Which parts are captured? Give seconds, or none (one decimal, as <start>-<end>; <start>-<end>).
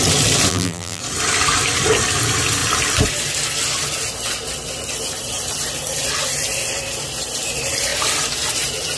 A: 0.0-0.5; 1.0-9.0